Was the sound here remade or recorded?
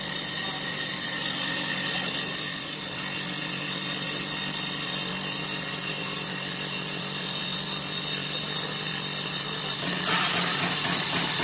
recorded